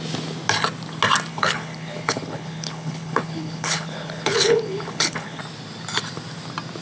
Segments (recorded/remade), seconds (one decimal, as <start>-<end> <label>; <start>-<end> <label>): 0.0-1.3 recorded; 1.3-5.4 remade; 5.4-6.8 recorded

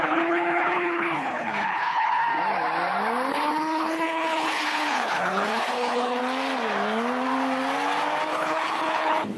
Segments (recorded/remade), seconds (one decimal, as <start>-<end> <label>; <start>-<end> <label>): 0.0-2.2 remade; 2.2-3.3 recorded; 3.3-6.2 remade; 6.2-8.3 recorded; 8.3-9.4 remade